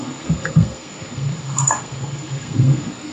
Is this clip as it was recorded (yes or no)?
no